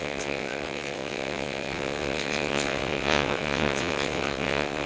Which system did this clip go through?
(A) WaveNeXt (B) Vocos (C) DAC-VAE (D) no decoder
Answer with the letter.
A